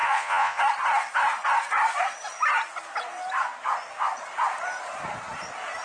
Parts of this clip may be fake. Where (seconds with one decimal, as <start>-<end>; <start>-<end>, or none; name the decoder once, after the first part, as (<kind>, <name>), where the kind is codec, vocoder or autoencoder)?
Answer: 0.0-0.6 (vocoder, Vocos)